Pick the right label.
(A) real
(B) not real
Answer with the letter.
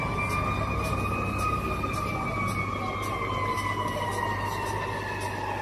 A